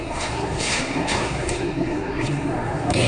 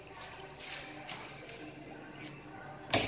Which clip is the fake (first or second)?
first